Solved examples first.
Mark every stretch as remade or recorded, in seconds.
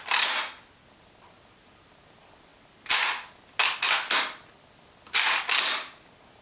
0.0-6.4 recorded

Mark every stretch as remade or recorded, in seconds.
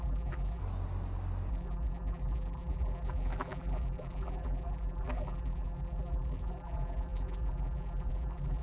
0.0-0.6 remade; 0.6-1.5 recorded; 1.5-8.6 remade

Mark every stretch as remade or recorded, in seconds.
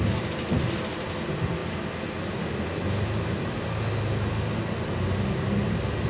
0.0-6.1 recorded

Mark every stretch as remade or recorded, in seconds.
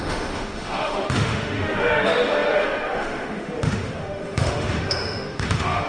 0.0-5.9 remade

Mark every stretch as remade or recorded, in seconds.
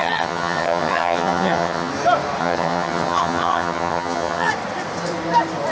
0.0-1.9 remade; 1.9-2.4 recorded; 2.4-4.5 remade; 4.5-5.7 recorded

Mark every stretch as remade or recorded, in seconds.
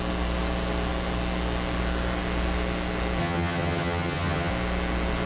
0.0-3.2 recorded; 3.2-4.5 remade; 4.5-5.3 recorded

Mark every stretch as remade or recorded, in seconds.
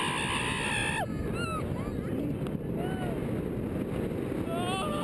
0.0-5.0 recorded